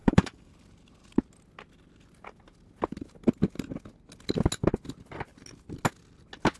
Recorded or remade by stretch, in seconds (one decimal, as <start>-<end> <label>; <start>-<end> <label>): 0.0-0.5 remade; 0.5-6.6 recorded